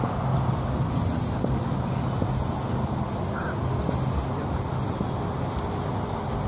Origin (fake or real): real